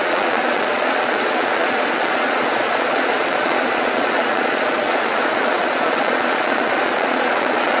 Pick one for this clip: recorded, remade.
remade